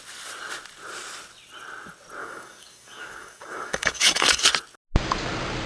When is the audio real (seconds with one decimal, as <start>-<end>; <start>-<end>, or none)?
0.0-2.2; 4.4-5.7